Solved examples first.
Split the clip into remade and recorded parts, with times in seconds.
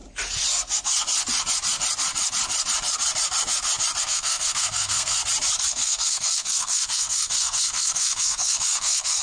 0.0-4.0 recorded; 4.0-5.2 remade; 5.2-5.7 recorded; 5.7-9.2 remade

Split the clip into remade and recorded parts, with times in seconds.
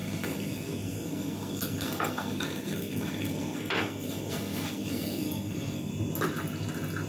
0.0-5.9 remade; 5.9-7.1 recorded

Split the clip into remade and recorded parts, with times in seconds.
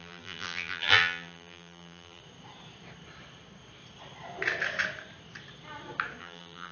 0.0-2.2 remade; 2.2-6.2 recorded; 6.2-6.7 remade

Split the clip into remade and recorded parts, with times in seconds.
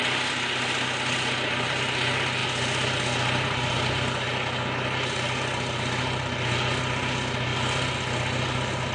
0.0-8.9 recorded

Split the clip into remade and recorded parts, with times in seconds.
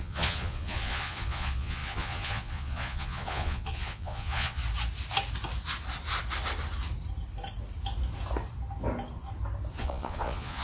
0.0-4.6 remade; 4.6-9.8 recorded; 9.8-10.6 remade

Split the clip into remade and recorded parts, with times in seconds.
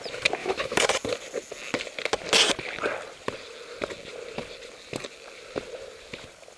0.0-0.4 recorded; 0.4-0.9 remade; 0.9-6.6 recorded